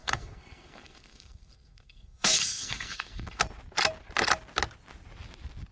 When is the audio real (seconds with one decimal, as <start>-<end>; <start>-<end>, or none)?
3.4-5.7